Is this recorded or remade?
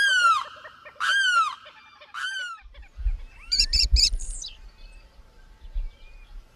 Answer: remade